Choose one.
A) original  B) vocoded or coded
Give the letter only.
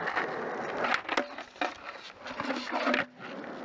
A